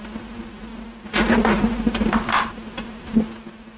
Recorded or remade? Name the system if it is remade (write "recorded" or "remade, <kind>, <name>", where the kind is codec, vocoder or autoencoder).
recorded